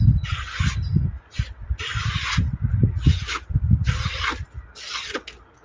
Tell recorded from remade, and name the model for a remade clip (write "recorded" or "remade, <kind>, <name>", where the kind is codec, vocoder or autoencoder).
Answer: recorded